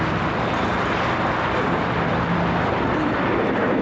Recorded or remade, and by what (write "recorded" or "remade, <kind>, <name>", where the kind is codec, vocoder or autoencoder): recorded